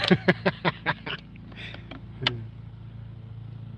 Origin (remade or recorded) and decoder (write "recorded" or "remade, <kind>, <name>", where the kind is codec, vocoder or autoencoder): recorded